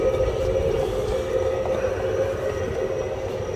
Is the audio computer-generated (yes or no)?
no